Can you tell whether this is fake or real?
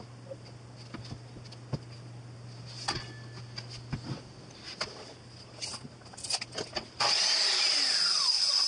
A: real